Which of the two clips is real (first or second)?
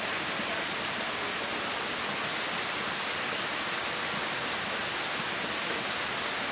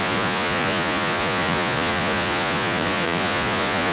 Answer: first